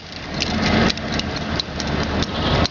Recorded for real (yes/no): yes